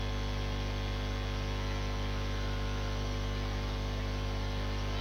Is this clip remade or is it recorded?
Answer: recorded